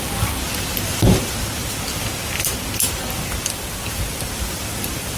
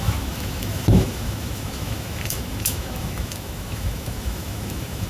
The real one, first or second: first